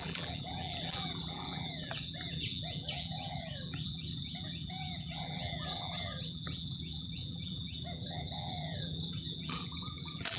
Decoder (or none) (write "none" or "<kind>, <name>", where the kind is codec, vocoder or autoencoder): vocoder, BigVGAN v2